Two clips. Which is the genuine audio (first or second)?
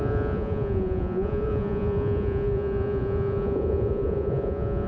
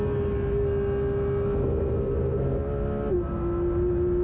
second